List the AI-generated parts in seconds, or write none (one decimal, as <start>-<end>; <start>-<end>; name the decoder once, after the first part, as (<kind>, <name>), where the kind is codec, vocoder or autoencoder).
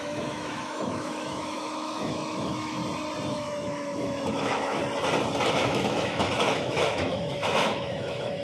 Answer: 0.0-2.8 (autoencoder, DAC-VAE); 3.3-4.8; 5.5-8.4